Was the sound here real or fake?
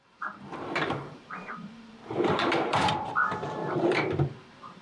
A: fake